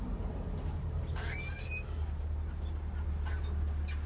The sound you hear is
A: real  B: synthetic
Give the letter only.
A